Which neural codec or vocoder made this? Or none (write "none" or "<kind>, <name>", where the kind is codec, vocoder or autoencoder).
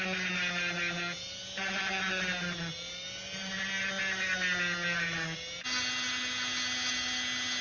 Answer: none